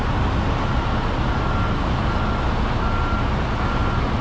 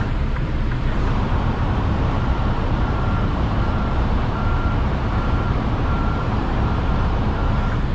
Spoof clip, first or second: second